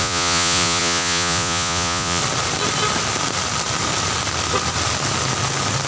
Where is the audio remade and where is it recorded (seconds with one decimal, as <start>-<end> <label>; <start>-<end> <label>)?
0.0-2.2 remade; 2.2-5.9 recorded